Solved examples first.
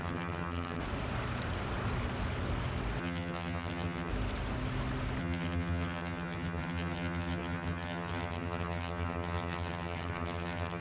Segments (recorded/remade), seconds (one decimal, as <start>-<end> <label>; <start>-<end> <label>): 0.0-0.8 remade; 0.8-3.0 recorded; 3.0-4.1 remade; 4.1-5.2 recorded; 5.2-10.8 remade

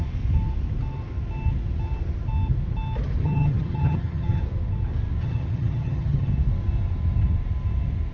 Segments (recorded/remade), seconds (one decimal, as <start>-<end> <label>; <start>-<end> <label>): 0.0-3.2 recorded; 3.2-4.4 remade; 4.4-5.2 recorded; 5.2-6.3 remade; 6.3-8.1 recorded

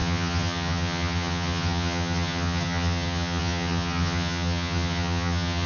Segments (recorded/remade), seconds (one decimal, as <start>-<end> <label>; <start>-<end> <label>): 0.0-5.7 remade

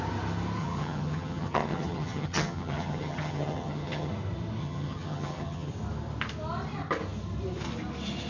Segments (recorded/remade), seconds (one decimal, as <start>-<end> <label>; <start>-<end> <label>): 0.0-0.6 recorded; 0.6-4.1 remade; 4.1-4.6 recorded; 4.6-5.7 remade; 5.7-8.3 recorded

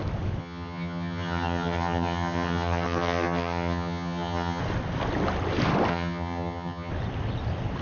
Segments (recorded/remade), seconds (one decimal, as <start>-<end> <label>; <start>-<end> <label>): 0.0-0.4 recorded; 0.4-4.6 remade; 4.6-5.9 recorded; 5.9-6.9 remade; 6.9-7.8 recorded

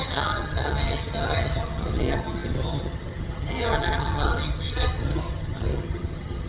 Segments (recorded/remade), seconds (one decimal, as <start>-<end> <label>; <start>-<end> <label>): 0.0-6.5 remade